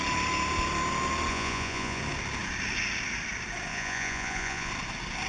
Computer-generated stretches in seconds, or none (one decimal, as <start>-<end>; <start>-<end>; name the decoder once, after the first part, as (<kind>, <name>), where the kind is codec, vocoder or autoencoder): 1.3-2.0 (vocoder, Vocos); 3.7-4.7